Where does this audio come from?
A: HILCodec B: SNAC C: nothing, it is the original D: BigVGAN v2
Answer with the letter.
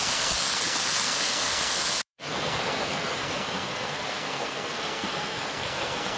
B